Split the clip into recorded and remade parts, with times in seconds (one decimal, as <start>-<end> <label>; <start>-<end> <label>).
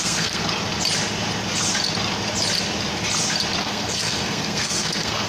0.0-0.4 remade; 0.4-3.6 recorded; 3.6-5.3 remade